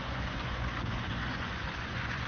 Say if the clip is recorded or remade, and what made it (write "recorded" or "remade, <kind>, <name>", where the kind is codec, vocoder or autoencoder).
remade, vocoder, Vocos